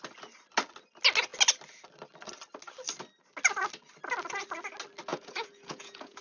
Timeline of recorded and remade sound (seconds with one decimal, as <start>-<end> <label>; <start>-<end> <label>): 0.0-5.1 recorded; 5.1-6.2 remade